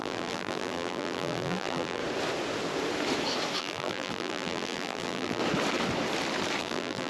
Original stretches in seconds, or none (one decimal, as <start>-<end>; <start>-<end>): 2.0-3.6; 5.4-6.6